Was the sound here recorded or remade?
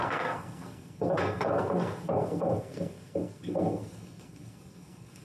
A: remade